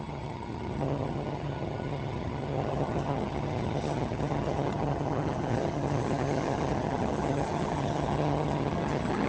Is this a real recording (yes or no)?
no